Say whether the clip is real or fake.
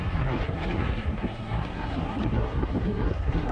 fake